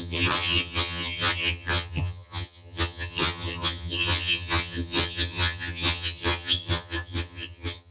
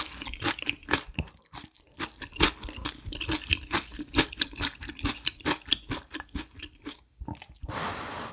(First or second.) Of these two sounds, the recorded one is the second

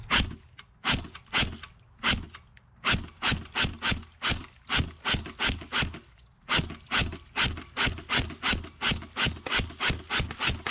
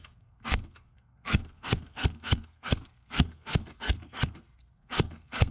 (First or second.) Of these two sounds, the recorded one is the first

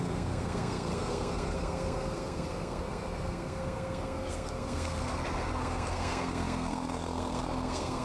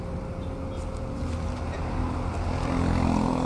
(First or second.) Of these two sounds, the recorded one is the second